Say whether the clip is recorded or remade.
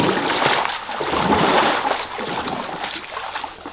recorded